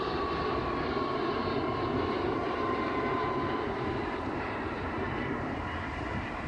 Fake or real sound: fake